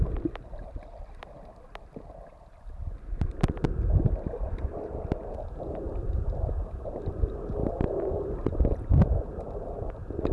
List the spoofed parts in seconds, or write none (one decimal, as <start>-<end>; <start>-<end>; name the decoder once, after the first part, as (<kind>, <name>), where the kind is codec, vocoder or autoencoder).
none